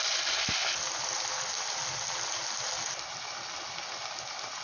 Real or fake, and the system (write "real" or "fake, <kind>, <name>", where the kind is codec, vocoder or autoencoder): real